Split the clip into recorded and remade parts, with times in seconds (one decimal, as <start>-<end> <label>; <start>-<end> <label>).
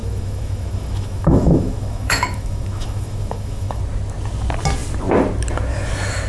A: 0.0-3.8 remade; 3.8-6.3 recorded